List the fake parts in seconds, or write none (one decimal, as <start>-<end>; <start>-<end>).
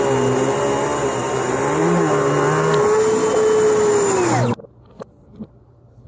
0.9-2.1